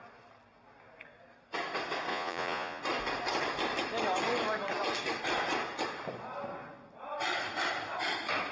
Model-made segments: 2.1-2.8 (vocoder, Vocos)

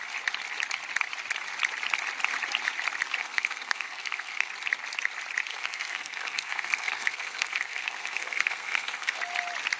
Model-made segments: 3.2-4.5 (codec, SNAC); 5.5-9.2